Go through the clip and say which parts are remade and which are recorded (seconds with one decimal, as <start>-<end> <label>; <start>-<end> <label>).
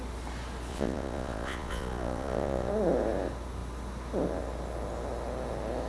0.0-0.7 recorded; 0.7-2.7 remade; 2.7-5.9 recorded